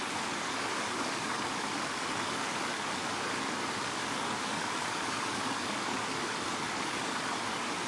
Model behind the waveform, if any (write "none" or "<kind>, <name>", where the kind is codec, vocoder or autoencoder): codec, DAC